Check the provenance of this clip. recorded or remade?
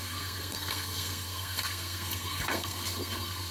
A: remade